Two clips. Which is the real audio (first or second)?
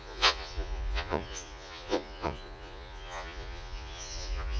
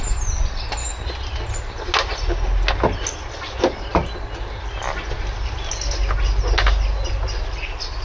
second